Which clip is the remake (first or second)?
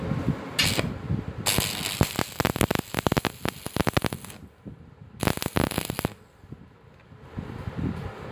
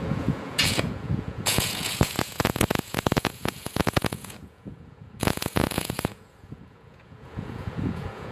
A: second